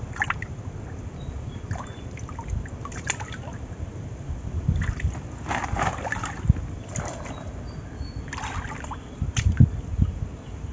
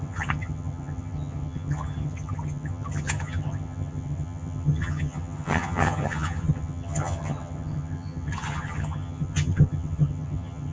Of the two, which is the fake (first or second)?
second